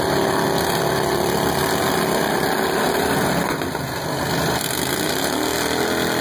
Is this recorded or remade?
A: recorded